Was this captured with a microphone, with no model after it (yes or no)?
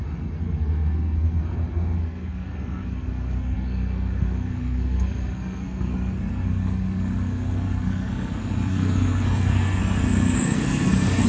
no